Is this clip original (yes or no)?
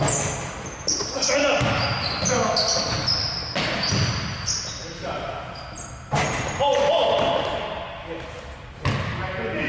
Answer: yes